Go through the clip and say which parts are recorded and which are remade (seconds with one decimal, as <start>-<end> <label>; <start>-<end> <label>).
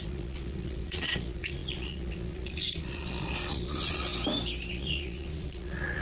0.0-4.1 remade; 4.1-4.7 recorded; 4.7-6.0 remade